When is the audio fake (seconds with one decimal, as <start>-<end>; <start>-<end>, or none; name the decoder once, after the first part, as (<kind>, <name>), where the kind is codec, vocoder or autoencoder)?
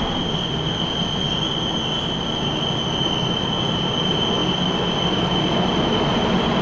none